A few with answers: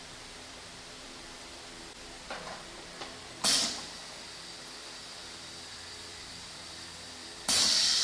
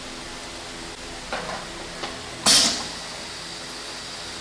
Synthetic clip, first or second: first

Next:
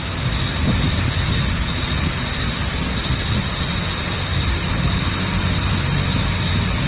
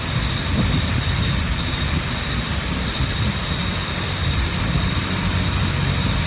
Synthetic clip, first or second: second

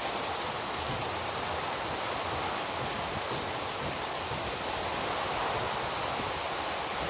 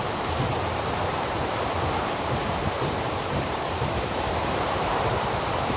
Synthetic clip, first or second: second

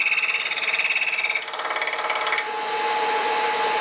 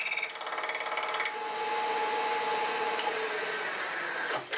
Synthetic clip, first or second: first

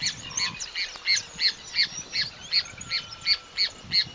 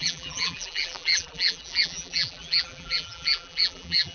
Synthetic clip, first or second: second